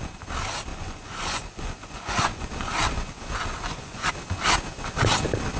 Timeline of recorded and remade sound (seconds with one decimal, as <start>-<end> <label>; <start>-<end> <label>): 0.0-0.7 recorded; 0.7-4.1 remade; 4.1-5.6 recorded